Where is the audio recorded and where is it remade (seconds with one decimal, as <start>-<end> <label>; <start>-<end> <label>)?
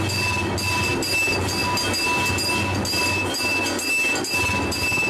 0.0-5.1 recorded